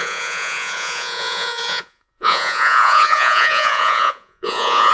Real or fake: fake